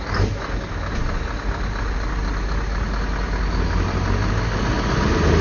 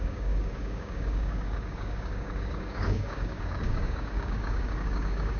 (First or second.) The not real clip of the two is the second